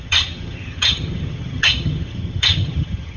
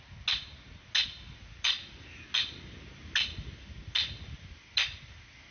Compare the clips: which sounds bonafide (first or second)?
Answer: second